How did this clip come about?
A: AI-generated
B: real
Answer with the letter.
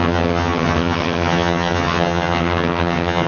A